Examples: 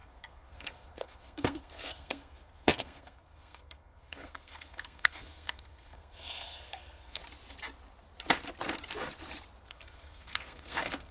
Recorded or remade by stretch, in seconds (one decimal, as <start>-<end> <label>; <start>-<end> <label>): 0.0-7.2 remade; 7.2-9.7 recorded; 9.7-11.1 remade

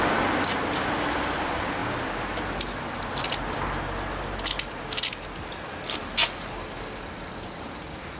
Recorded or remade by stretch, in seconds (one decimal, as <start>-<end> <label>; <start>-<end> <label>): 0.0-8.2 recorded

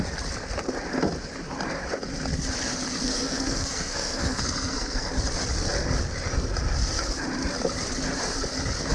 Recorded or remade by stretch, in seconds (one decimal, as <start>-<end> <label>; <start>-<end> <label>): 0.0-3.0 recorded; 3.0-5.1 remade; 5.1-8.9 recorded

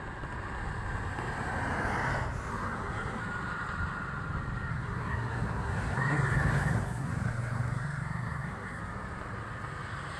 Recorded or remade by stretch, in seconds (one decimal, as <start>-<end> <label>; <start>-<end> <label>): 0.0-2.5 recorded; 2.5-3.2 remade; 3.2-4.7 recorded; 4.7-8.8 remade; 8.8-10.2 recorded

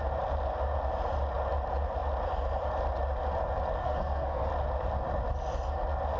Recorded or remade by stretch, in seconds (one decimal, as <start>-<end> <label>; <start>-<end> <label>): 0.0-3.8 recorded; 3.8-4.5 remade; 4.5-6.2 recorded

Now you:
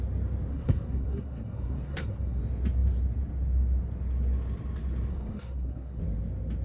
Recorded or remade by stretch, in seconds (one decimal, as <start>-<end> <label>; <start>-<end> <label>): 0.0-0.5 recorded; 0.5-2.4 remade; 2.4-5.1 recorded; 5.1-6.0 remade; 6.0-6.6 recorded

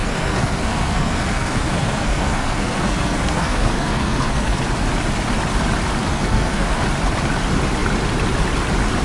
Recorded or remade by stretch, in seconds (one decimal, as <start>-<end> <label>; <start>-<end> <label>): 0.0-4.6 remade; 4.6-6.1 recorded; 6.1-6.8 remade; 6.8-9.0 recorded

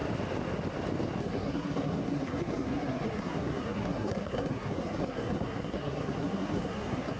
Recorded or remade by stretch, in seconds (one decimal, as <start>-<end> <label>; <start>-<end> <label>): 0.0-1.2 recorded; 1.2-7.2 remade